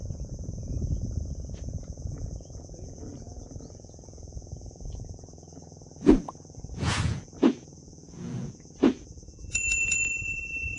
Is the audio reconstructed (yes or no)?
yes